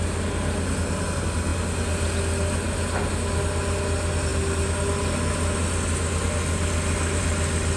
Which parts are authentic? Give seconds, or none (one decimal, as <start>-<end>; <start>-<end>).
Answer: 0.0-7.8